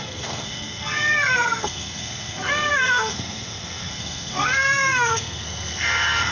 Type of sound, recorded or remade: remade